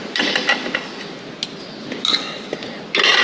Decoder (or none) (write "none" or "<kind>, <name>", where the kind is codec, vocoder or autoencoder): none